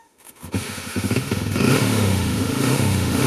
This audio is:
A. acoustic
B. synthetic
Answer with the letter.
B